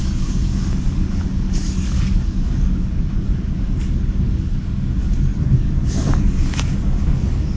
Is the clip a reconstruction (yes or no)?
yes